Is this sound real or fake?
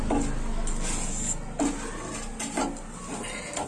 real